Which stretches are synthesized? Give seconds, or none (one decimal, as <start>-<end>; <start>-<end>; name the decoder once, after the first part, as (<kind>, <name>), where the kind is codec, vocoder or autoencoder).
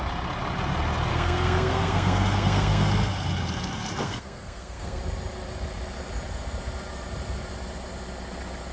1.1-2.9 (codec, SNAC); 4.0-5.0